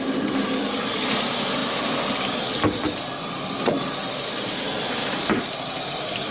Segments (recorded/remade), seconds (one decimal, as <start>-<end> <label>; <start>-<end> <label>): 0.0-6.3 recorded